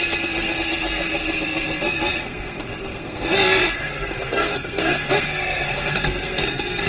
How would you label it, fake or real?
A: fake